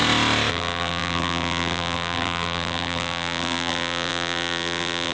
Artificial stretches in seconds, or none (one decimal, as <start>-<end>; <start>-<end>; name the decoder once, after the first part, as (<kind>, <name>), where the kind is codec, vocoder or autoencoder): 0.5-5.1 (vocoder, BigVGAN v2)